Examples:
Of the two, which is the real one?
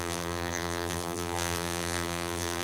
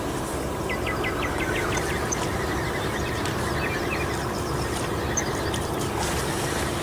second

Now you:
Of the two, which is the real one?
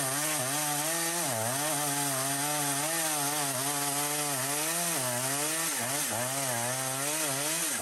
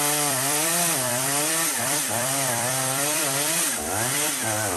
first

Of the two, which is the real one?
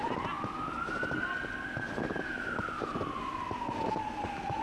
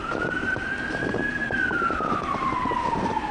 first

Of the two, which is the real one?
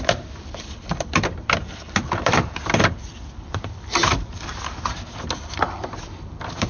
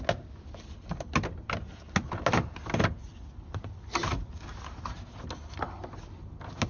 second